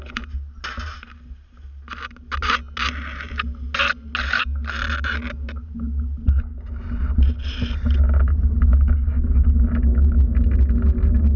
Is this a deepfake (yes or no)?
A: no